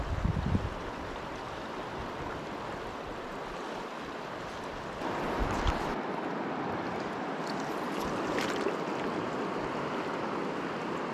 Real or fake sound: real